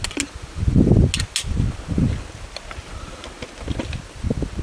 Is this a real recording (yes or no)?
yes